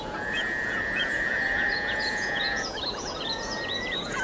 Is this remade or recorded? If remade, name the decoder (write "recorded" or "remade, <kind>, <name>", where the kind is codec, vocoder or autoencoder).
remade, vocoder, Vocos